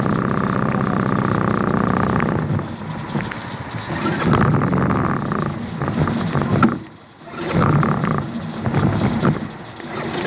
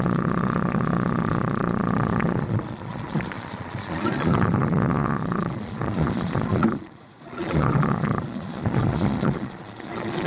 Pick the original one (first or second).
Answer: first